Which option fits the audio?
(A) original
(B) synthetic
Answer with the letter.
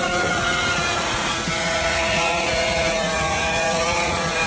B